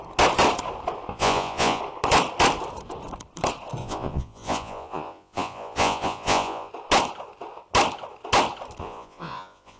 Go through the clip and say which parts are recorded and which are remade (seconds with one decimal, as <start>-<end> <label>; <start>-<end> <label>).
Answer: 0.0-1.1 recorded; 1.1-1.8 remade; 1.8-3.8 recorded; 3.8-6.7 remade; 6.7-8.8 recorded; 8.8-9.8 remade